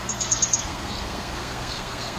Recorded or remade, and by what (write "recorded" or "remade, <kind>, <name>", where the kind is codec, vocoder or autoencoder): remade, codec, SNAC